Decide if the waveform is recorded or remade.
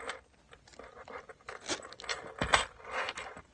recorded